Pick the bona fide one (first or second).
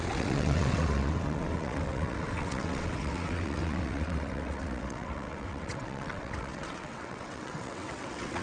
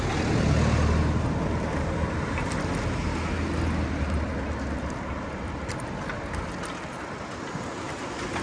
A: second